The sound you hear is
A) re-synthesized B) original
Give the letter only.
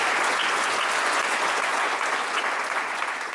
A